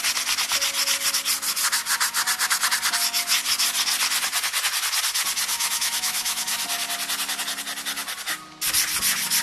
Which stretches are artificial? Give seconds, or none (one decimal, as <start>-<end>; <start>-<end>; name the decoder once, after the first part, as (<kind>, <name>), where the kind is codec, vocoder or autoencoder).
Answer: 5.5-6.4 (autoencoder, DAC-VAE)